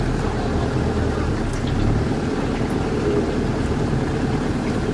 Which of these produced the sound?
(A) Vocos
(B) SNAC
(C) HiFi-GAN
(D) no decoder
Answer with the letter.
D